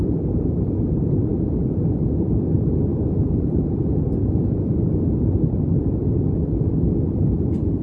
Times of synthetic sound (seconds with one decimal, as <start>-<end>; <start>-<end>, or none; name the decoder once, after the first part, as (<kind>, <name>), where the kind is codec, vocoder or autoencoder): 0.0-1.3 (vocoder, BigVGAN v2); 1.9-2.9; 6.1-7.8